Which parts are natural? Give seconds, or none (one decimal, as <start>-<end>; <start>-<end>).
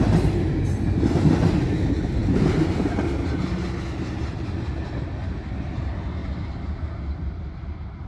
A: 0.0-6.2